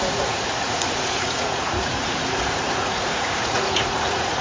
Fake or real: fake